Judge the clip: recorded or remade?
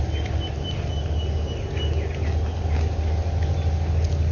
recorded